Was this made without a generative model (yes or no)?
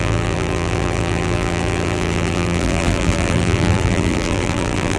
no